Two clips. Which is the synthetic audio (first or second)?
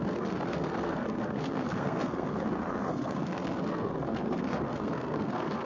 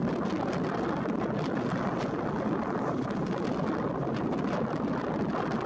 first